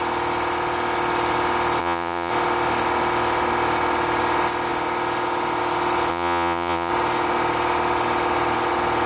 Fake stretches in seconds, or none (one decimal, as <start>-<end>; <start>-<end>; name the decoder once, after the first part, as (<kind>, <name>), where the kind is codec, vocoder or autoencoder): 1.8-2.3 (vocoder, Vocos); 6.1-6.9